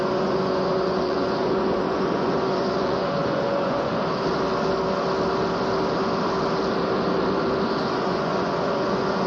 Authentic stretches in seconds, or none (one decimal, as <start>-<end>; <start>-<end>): 3.9-7.8